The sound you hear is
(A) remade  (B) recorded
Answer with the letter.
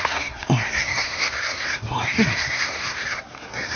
A